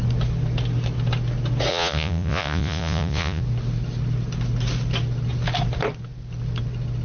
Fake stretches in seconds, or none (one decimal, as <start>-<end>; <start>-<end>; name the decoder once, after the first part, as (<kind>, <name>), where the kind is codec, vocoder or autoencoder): 1.7-3.4 (vocoder, Vocos)